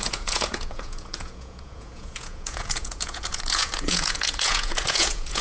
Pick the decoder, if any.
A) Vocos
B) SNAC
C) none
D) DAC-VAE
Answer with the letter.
A